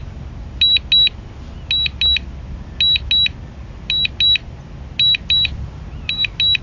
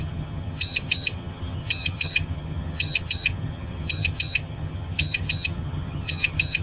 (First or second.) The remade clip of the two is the second